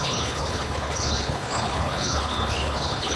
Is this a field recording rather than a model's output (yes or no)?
no